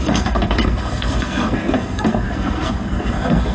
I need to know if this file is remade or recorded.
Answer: remade